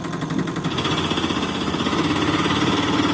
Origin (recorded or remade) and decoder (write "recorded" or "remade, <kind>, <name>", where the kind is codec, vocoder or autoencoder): recorded